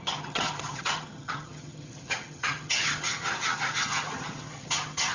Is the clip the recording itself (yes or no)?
no